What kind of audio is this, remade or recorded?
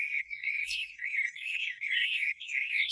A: remade